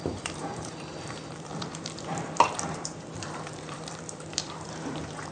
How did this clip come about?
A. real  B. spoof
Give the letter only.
B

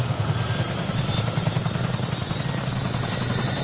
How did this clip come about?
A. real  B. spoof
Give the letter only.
A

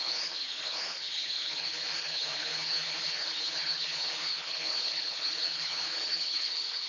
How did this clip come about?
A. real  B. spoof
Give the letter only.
B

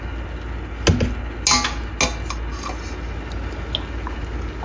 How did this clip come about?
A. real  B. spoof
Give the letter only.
A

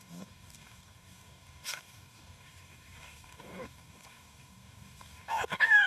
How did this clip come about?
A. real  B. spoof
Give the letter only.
B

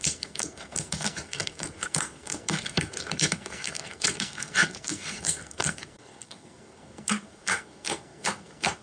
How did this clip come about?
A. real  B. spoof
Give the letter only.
B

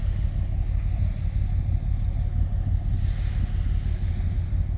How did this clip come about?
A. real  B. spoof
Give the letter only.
A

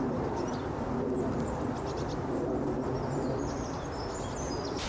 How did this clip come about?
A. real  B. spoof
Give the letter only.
A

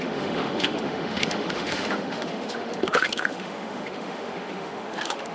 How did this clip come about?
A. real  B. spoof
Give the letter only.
B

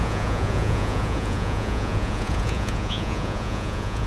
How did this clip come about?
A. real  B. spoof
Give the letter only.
B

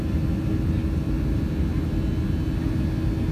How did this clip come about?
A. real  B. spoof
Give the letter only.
A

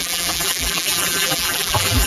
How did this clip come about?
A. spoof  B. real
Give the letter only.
A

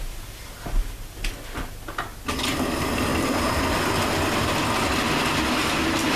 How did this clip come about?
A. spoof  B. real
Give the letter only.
B